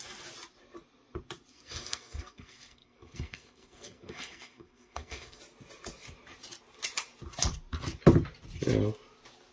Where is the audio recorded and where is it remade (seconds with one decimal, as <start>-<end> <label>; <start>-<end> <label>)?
0.0-1.5 recorded; 1.5-5.4 remade; 5.4-9.5 recorded

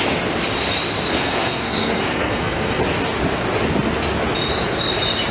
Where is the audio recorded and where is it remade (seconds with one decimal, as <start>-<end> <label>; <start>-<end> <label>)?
0.0-1.1 recorded; 1.1-2.8 remade; 2.8-5.3 recorded